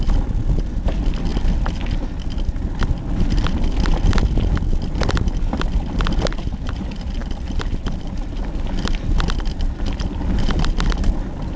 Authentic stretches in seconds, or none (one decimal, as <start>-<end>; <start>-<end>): 0.0-11.6